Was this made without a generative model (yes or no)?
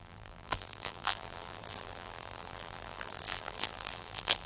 no